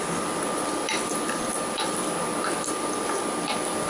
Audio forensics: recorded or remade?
recorded